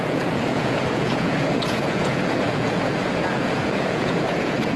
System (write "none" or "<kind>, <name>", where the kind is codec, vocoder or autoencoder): vocoder, Vocos